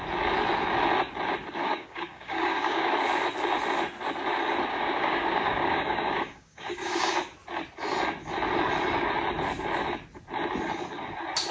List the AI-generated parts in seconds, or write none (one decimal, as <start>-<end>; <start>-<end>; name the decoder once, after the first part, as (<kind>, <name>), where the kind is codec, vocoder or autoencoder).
1.6-2.9 (codec, DAC); 4.7-7.1